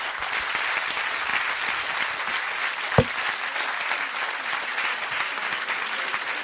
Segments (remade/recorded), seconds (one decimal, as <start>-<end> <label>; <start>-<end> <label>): 0.0-4.9 recorded; 4.9-5.6 remade; 5.6-6.4 recorded

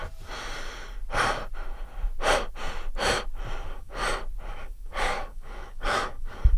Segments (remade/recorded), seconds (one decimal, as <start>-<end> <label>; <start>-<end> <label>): 0.0-3.6 recorded; 3.6-4.0 remade; 4.0-4.5 recorded; 4.5-6.6 remade

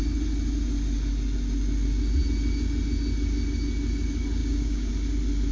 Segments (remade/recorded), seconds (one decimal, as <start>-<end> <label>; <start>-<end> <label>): 0.0-4.4 recorded; 4.4-4.9 remade; 4.9-5.5 recorded

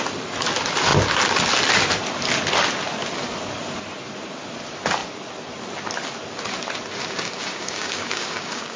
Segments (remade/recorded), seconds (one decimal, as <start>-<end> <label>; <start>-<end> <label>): 0.0-7.0 recorded; 7.0-8.8 remade

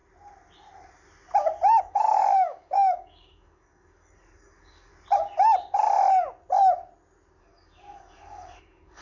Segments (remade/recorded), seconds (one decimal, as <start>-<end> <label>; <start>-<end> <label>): 0.0-1.8 recorded; 1.8-4.9 remade; 4.9-7.4 recorded; 7.4-9.0 remade